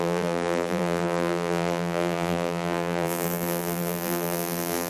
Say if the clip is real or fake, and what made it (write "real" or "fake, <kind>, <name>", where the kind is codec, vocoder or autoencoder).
fake, vocoder, BigVGAN v2